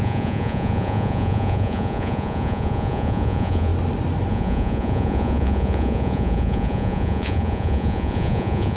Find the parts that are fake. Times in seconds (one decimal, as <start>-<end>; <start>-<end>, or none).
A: 0.0-3.7; 4.3-8.8